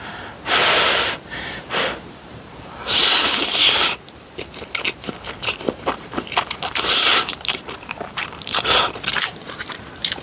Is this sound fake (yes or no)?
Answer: yes